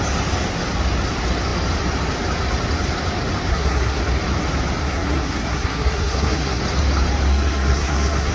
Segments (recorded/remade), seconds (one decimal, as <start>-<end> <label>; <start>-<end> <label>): 0.0-3.5 recorded; 3.5-4.0 remade; 4.0-4.8 recorded; 4.8-6.6 remade; 6.6-7.3 recorded; 7.3-8.3 remade